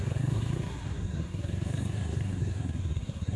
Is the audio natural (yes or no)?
no